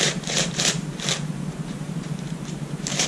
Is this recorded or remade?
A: remade